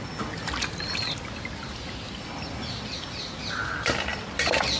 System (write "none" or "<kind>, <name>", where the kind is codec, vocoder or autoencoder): none